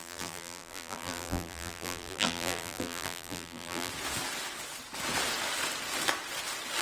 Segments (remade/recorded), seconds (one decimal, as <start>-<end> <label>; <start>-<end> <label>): 0.0-3.9 remade; 3.9-6.8 recorded